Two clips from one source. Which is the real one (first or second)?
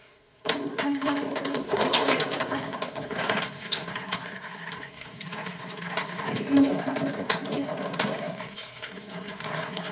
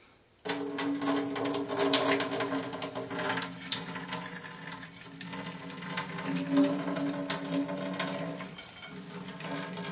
second